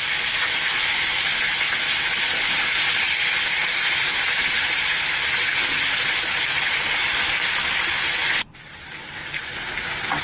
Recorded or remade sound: recorded